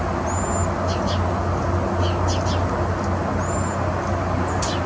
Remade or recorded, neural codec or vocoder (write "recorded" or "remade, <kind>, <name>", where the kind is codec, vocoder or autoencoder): recorded